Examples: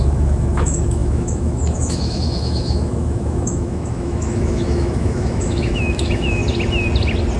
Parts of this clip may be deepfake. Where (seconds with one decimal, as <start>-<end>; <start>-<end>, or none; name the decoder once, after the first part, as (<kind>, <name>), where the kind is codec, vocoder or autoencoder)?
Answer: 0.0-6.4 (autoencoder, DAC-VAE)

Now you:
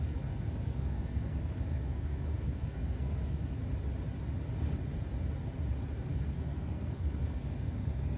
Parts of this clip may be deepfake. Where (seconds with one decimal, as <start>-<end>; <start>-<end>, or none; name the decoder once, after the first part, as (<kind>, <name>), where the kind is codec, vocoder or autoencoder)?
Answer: 0.0-3.6 (codec, SNAC); 6.1-8.2

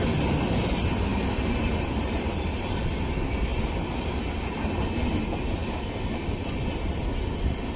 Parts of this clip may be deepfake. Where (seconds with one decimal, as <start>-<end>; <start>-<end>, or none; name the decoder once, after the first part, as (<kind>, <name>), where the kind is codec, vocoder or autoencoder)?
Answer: 1.1-3.1 (vocoder, BigVGAN v2)

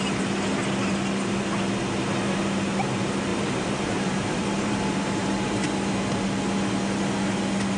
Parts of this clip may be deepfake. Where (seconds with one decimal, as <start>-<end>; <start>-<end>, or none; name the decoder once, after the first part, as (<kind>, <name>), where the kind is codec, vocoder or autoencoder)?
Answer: 3.3-5.7 (vocoder, BigVGAN v2)

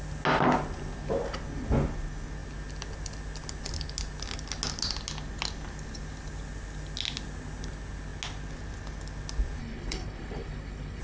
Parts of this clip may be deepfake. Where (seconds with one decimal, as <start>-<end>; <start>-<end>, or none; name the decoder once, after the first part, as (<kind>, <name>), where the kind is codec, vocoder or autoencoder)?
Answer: 9.6-11.0 (codec, HILCodec)

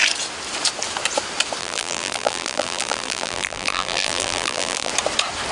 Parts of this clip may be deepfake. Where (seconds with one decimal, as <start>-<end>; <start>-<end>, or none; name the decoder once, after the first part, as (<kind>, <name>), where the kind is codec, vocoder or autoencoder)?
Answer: 1.6-4.9 (vocoder, BigVGAN v2)

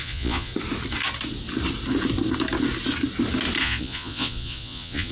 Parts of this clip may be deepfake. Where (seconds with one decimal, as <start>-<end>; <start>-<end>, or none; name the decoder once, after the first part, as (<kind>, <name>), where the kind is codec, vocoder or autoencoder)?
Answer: 0.0-0.5 (vocoder, Vocos); 3.6-5.1

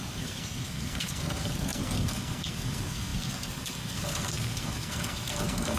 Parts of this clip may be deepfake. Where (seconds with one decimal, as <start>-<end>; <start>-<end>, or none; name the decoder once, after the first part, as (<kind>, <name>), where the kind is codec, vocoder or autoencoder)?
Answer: 0.0-5.8 (codec, SNAC)